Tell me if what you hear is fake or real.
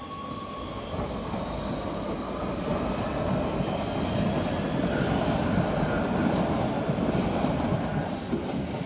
real